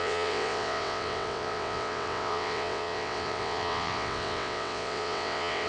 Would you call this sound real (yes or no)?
no